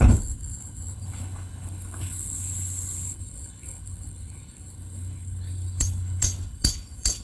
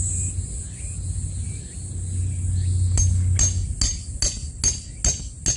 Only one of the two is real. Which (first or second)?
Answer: second